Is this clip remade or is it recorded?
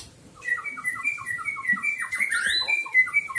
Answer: recorded